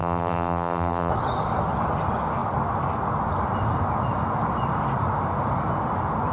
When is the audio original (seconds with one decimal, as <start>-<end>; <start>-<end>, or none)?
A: 1.1-6.3